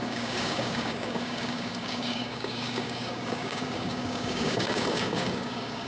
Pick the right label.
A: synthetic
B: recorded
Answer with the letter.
A